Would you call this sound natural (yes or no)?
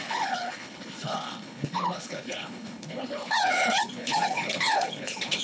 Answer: no